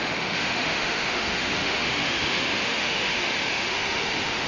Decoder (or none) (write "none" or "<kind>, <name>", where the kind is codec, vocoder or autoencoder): autoencoder, DAC-VAE